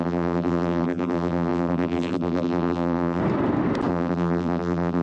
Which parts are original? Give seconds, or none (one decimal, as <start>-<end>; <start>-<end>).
3.2-3.9